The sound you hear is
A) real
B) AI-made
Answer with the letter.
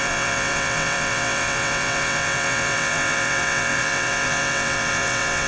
B